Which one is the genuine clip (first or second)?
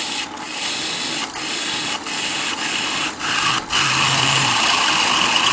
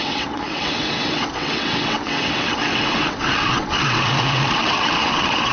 first